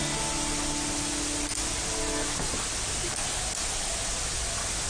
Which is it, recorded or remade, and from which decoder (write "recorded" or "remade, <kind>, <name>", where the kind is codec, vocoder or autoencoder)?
recorded